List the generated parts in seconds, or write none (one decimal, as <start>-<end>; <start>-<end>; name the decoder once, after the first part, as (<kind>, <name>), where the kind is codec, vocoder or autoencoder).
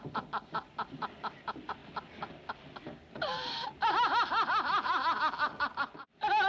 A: none